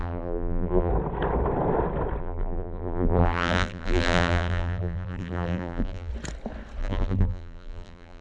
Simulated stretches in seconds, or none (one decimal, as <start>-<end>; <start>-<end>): 0.0-0.9; 2.2-6.1; 6.8-8.2